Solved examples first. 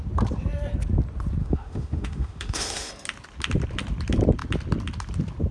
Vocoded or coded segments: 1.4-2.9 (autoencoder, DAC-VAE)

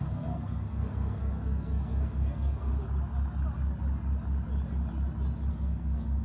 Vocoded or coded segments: 0.0-2.7 (codec, SNAC); 5.5-6.2

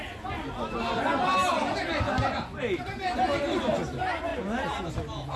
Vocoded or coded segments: none

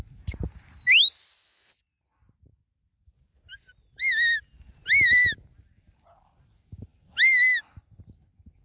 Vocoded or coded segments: none

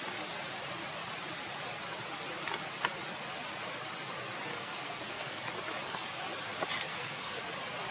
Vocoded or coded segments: 4.5-5.4 (codec, SNAC); 6.9-7.4